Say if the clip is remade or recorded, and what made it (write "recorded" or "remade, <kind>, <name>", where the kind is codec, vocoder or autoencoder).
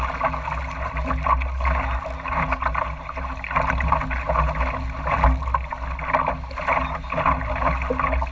recorded